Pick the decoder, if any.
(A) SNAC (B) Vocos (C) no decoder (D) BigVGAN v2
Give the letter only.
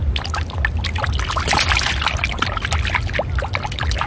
C